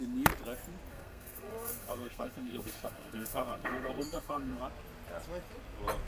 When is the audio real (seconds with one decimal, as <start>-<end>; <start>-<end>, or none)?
0.0-0.9; 4.6-6.1